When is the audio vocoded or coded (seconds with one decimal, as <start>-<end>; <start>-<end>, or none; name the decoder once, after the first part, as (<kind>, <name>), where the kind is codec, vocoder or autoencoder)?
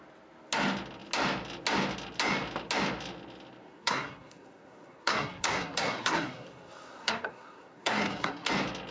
3.6-8.5 (codec, SNAC)